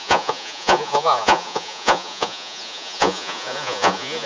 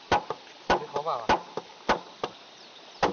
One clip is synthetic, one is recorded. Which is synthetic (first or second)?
first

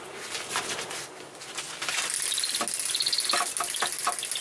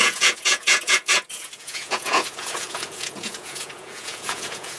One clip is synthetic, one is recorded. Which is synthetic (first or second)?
second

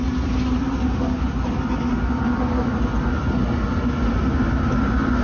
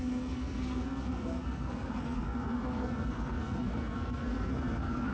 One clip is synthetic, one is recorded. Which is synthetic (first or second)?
second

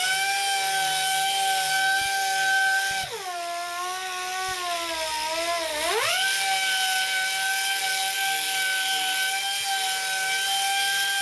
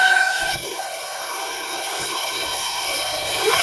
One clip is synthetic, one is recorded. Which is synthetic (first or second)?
second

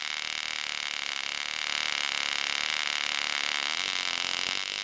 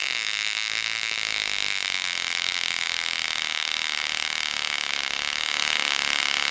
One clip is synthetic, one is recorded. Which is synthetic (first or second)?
second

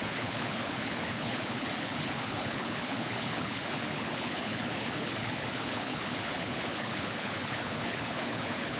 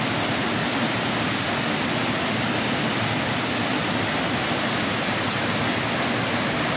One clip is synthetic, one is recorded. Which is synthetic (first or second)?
first